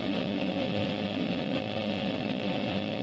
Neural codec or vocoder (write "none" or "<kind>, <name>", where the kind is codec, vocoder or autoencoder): vocoder, WaveNeXt